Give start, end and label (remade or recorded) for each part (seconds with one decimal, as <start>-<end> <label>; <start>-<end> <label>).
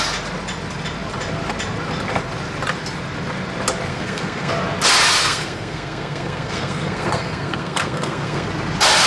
0.0-3.9 recorded; 3.9-4.5 remade; 4.5-5.2 recorded; 5.2-8.5 remade; 8.5-9.1 recorded